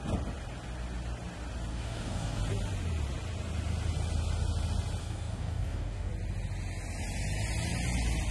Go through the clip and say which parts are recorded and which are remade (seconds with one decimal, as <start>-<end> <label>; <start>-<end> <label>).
0.0-1.7 recorded; 1.7-2.4 remade; 2.4-5.0 recorded; 5.0-6.1 remade; 6.1-8.3 recorded